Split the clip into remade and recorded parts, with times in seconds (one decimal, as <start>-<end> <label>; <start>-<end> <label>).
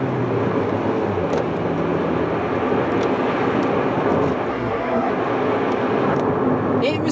0.0-4.5 recorded; 4.5-5.1 remade; 5.1-7.1 recorded